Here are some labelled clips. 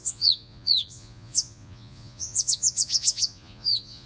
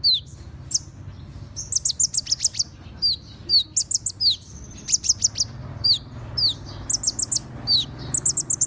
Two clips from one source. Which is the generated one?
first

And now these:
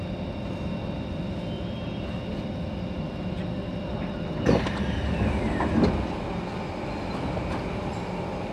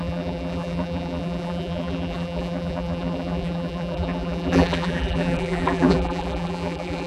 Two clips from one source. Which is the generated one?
second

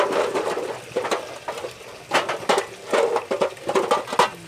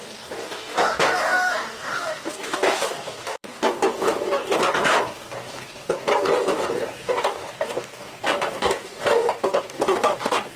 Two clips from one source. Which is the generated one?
second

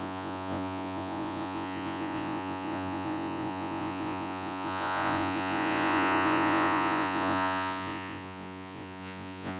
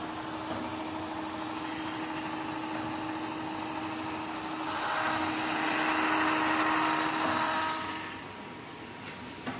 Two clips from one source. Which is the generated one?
first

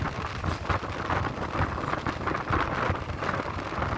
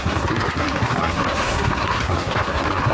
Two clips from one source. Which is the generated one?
second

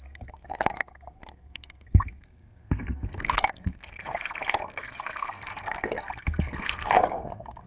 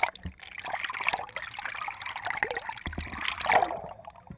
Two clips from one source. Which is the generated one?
first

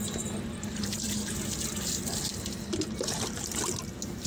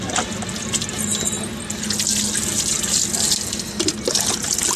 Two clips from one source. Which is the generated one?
first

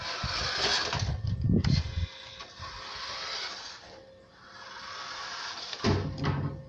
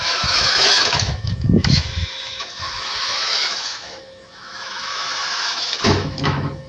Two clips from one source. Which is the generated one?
second